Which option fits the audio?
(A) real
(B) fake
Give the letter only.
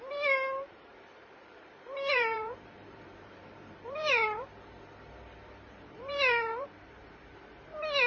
B